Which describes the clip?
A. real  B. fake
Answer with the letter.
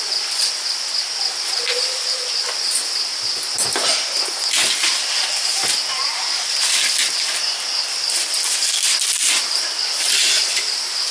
A